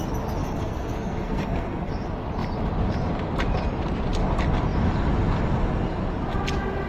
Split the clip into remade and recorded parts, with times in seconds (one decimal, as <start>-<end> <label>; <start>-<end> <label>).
0.0-0.4 recorded; 0.4-1.9 remade; 1.9-6.9 recorded